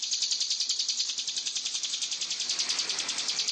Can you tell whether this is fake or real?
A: real